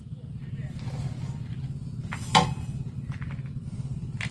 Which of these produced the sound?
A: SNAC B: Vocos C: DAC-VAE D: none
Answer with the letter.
D